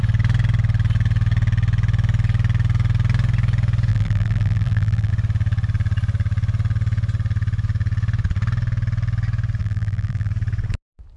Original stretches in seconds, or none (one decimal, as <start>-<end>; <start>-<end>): 0.0-3.9; 5.1-9.6; 10.3-11.2